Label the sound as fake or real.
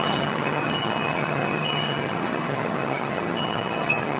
fake